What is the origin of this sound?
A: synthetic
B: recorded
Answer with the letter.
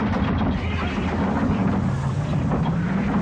B